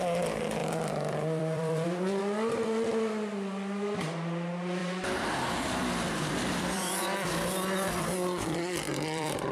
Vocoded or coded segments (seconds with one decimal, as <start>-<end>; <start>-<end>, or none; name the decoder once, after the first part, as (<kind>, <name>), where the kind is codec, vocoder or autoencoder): 0.6-2.2 (vocoder, BigVGAN v2); 4.8-9.5